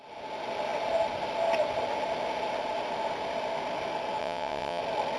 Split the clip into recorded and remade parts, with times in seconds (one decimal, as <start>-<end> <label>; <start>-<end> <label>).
0.0-4.2 recorded; 4.2-4.8 remade; 4.8-5.2 recorded